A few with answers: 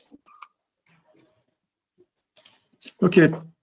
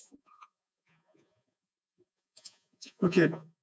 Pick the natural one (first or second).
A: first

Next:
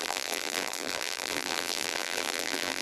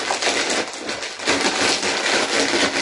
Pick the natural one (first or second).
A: second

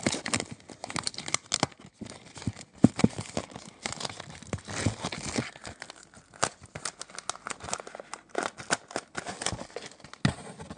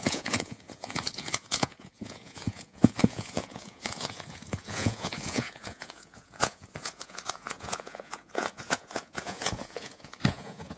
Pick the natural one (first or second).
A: first